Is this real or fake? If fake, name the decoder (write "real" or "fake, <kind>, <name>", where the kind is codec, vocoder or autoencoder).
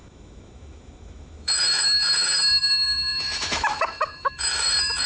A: fake, autoencoder, DAC-VAE